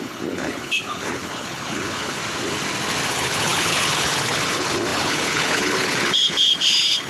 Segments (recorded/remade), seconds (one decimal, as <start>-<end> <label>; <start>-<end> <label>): 0.0-2.2 remade; 2.2-3.1 recorded; 3.1-7.1 remade